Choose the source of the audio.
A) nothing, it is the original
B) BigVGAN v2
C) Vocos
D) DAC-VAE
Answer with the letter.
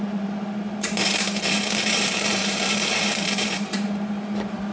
B